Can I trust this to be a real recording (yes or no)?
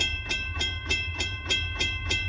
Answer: no